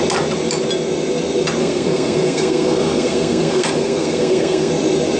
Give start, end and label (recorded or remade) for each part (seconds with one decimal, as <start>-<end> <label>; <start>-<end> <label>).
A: 0.0-1.6 recorded; 1.6-4.7 remade; 4.7-5.2 recorded